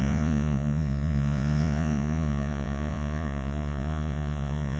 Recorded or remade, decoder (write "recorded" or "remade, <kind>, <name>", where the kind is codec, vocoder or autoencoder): remade, vocoder, Vocos